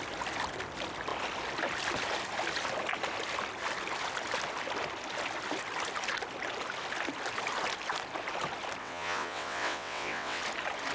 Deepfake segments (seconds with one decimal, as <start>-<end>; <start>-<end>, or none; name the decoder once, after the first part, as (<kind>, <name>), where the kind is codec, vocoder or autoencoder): 8.8-10.4 (vocoder, WaveNeXt)